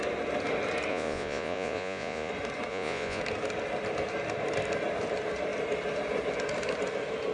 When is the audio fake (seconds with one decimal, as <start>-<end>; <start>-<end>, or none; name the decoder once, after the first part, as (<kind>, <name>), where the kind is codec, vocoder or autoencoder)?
0.9-2.3 (vocoder, Vocos); 2.7-3.2